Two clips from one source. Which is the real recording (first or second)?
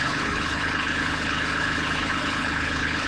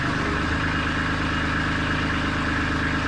second